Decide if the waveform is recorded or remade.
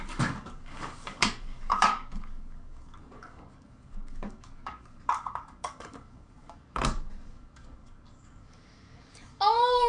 remade